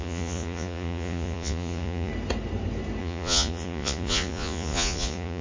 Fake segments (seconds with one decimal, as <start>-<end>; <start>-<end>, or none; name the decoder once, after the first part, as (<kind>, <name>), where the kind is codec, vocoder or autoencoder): 0.0-2.1 (vocoder, Vocos); 3.0-5.4